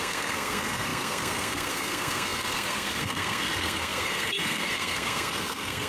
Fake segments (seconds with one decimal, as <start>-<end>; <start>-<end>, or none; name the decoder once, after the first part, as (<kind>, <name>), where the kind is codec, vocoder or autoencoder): 0.0-5.9 (codec, SNAC)